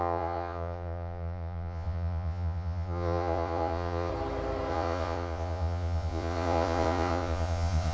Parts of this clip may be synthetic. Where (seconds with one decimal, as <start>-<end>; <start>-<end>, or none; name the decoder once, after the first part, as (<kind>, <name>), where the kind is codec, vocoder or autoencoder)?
0.0-4.1 (vocoder, Vocos); 4.7-7.9